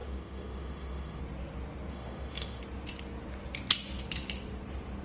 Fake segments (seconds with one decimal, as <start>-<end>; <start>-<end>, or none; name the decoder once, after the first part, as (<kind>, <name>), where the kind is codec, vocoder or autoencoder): 0.0-1.2 (autoencoder, DAC-VAE); 1.9-2.6